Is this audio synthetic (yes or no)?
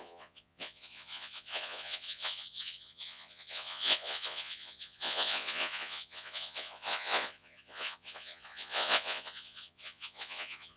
yes